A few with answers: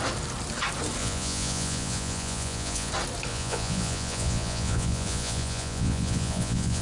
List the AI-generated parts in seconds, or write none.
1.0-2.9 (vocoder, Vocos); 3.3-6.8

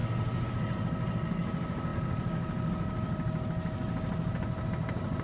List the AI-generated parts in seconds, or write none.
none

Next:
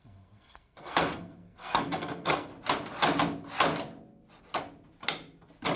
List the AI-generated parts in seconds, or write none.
0.0-2.5 (codec, SNAC)

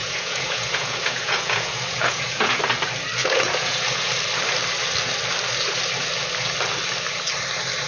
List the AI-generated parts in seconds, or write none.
0.0-2.6 (vocoder, Vocos); 3.2-4.1

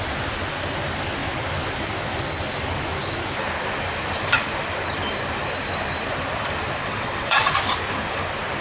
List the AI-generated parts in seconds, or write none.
6.8-7.5 (vocoder, WaveNeXt)